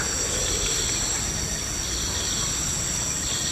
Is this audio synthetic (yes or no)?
no